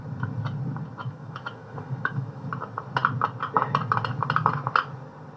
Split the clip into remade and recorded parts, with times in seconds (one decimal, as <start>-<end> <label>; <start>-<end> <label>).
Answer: 0.0-1.0 recorded; 1.0-2.5 remade; 2.5-5.4 recorded